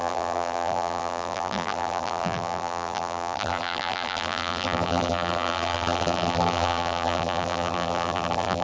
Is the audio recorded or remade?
remade